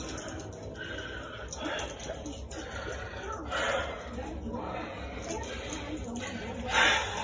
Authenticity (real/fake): real